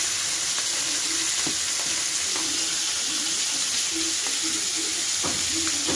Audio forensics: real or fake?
real